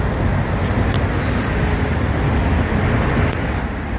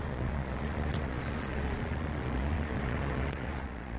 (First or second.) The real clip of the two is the first